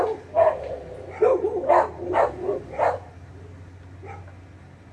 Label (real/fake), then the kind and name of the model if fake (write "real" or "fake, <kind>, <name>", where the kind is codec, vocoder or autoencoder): real